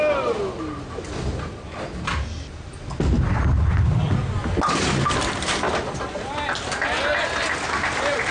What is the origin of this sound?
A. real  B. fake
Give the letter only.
A